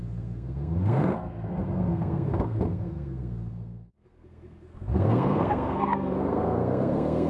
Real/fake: fake